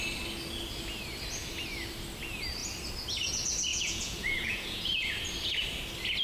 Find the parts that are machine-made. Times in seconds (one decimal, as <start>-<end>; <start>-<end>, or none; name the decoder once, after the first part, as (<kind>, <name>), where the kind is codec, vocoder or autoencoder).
3.7-5.2 (vocoder, Vocos)